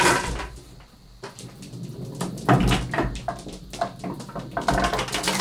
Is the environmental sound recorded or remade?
recorded